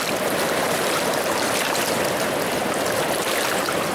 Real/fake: fake